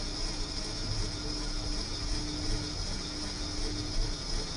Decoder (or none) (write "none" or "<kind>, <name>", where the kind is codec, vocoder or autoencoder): none